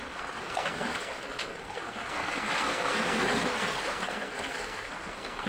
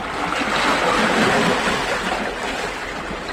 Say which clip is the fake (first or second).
first